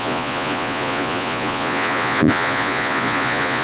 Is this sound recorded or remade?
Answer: remade